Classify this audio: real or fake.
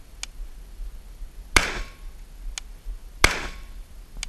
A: real